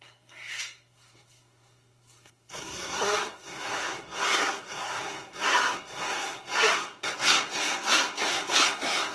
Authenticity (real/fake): fake